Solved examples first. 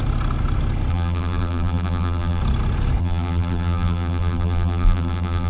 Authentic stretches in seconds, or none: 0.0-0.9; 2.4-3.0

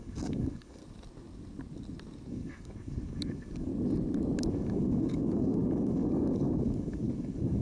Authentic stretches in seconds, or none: 0.8-2.3; 3.7-4.5

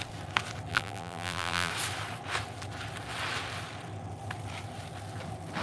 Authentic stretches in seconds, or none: 0.0-0.7; 1.7-5.6

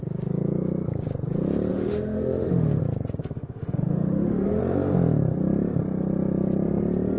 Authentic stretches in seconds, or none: 0.0-1.7; 2.8-3.2; 4.6-7.2

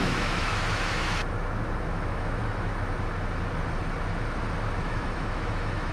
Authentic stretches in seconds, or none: 1.2-1.9; 2.7-4.8

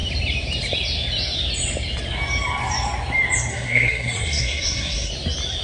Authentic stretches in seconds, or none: 0.0-3.5; 5.1-5.6